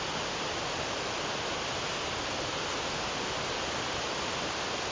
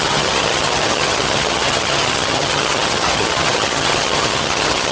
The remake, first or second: second